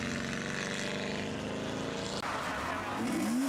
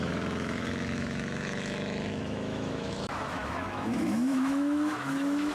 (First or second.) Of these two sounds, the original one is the first